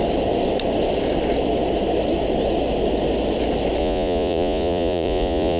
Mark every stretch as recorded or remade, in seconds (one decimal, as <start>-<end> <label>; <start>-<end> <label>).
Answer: 0.0-3.8 recorded; 3.8-5.6 remade